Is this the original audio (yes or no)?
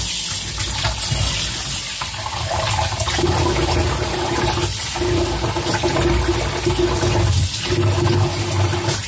yes